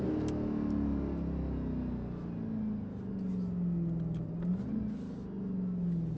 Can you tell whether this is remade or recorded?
recorded